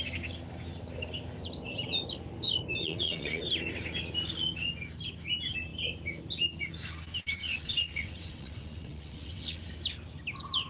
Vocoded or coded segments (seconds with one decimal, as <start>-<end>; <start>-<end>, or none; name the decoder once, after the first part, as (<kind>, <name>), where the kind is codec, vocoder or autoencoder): 2.8-3.4 (vocoder, WaveNeXt); 7.4-9.7